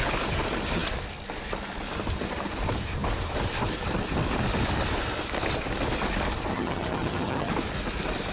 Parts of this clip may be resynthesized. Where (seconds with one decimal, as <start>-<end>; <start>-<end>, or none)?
6.5-7.5